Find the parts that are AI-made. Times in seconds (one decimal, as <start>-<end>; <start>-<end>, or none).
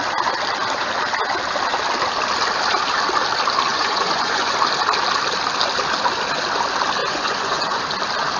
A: 3.7-4.5; 7.0-7.8